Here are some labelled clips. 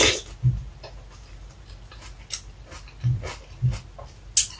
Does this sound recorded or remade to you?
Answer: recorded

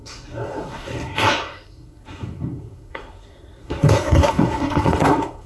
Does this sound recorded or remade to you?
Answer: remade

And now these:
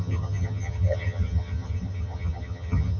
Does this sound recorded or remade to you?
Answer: remade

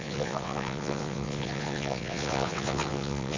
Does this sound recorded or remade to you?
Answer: remade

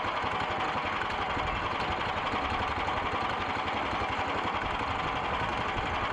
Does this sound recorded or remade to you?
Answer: recorded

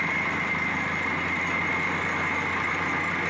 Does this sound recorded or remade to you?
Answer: recorded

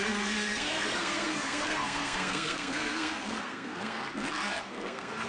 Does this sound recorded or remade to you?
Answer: remade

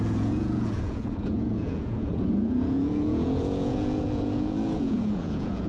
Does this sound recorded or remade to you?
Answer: remade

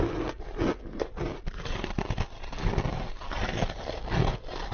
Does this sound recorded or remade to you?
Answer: recorded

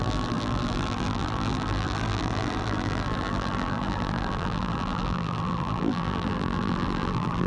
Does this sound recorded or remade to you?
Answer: remade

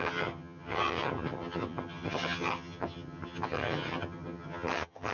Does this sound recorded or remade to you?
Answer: remade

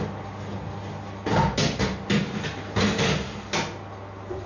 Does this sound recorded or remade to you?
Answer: recorded